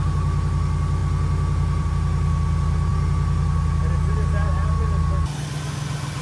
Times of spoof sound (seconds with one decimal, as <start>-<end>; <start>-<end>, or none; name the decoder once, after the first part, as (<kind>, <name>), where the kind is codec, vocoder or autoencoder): none